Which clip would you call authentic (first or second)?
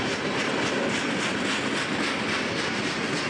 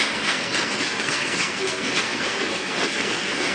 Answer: first